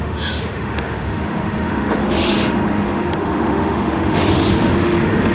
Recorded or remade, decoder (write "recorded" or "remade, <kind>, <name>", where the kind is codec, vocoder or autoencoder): remade, autoencoder, DAC-VAE